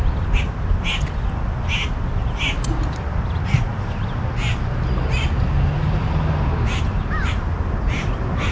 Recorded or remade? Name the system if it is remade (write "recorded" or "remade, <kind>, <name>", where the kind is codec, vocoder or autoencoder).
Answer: recorded